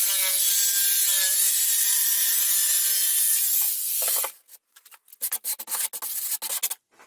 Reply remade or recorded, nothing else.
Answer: recorded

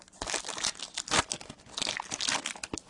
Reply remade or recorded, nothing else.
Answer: recorded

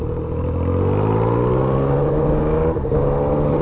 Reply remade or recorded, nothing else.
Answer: recorded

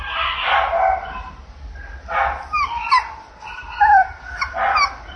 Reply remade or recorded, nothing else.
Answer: recorded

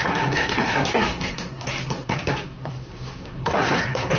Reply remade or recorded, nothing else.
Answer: remade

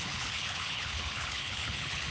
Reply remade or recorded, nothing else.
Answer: remade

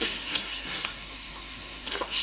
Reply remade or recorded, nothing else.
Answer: remade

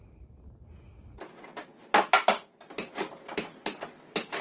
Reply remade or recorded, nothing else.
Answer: recorded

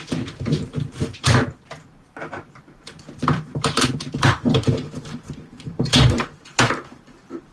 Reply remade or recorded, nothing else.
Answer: remade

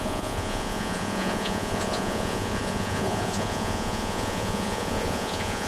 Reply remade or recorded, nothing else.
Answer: remade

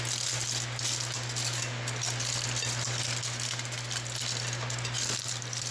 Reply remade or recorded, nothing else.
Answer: recorded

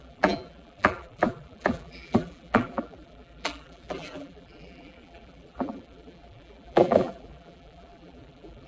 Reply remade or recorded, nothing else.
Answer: remade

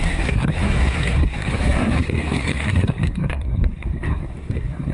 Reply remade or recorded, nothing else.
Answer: remade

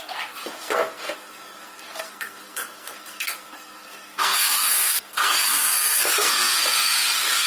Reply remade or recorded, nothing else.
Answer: remade